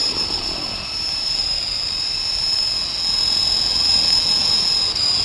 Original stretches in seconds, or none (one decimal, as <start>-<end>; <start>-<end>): 2.6-5.2